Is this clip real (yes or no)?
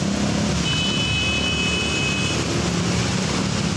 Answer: yes